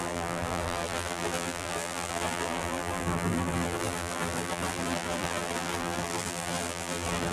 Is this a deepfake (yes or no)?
yes